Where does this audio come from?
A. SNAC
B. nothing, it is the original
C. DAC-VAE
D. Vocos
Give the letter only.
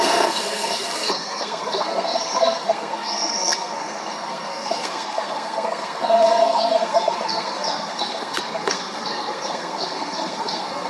A